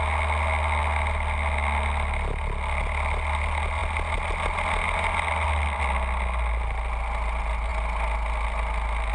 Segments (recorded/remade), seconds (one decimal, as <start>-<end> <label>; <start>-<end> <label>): 0.0-9.1 recorded